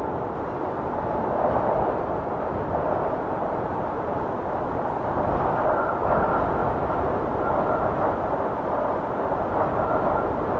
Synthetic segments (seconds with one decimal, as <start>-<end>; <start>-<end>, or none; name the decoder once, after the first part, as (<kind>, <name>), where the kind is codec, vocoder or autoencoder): none